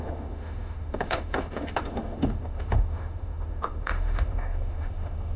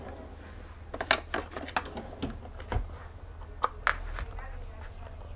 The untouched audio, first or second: second